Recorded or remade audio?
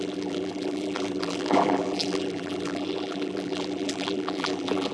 remade